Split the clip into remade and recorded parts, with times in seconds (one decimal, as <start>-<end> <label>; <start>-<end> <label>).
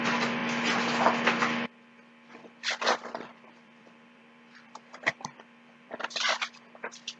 0.0-3.3 recorded; 3.3-5.9 remade; 5.9-7.2 recorded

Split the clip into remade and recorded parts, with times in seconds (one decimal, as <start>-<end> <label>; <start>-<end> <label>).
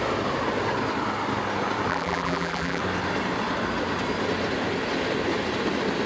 0.0-1.9 recorded; 1.9-2.8 remade; 2.8-6.1 recorded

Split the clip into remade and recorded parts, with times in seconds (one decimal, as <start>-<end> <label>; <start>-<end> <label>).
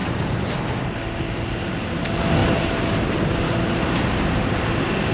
0.0-2.4 recorded; 2.4-4.6 remade; 4.6-5.1 recorded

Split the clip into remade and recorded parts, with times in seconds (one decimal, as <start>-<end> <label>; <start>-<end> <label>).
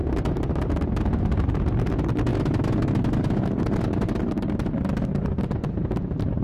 0.0-1.2 recorded; 1.2-2.3 remade; 2.3-3.6 recorded; 3.6-6.4 remade